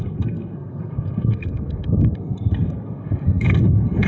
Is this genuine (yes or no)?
no